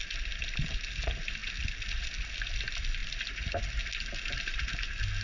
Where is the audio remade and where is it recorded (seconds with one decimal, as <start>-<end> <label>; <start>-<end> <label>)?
0.0-5.2 recorded